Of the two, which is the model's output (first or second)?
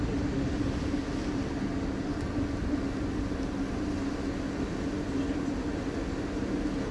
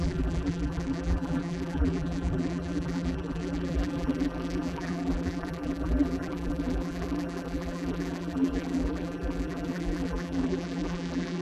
second